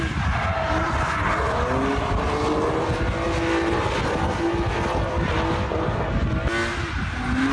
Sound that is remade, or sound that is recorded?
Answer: recorded